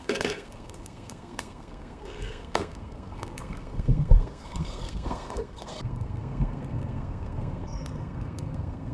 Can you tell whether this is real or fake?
fake